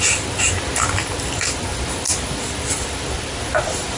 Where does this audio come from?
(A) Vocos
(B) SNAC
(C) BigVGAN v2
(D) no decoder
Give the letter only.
C